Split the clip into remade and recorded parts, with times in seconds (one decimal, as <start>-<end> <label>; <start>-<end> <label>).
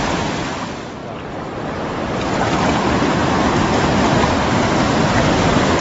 0.0-1.0 remade; 1.0-2.4 recorded; 2.4-3.1 remade; 3.1-5.0 recorded; 5.0-5.8 remade